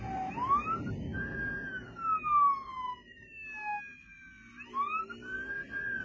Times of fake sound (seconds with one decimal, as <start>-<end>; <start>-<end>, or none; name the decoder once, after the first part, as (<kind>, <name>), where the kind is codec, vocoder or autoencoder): none